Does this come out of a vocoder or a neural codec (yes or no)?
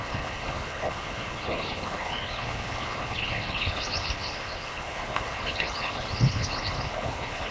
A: yes